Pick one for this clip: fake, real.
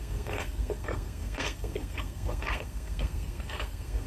fake